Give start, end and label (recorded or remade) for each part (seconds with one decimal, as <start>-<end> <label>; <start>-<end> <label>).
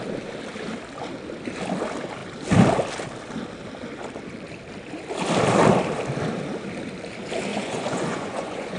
0.0-7.5 recorded; 7.5-8.8 remade